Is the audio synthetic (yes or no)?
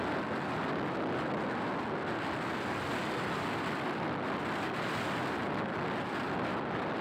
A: no